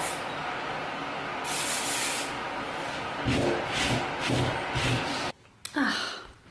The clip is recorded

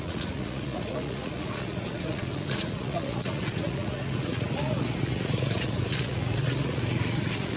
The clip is remade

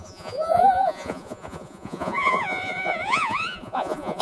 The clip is remade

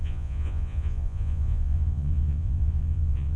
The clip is remade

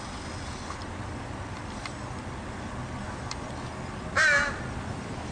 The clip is recorded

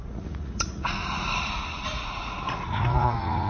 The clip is remade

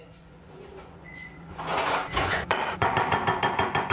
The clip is remade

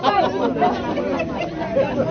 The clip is recorded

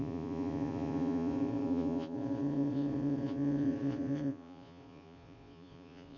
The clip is remade